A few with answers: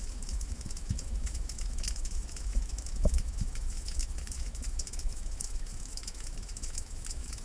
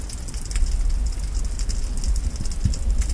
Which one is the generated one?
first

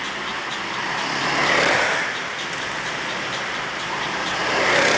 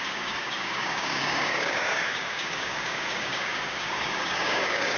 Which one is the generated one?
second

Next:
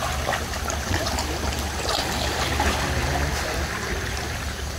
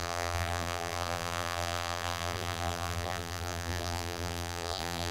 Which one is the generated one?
second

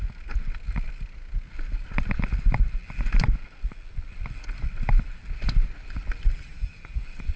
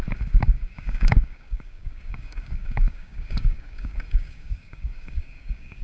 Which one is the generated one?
second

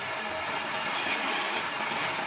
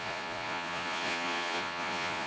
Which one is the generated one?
second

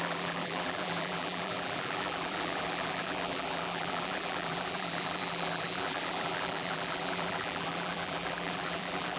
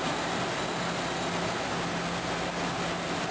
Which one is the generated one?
first